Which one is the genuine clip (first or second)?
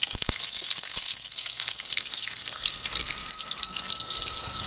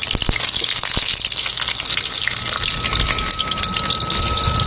second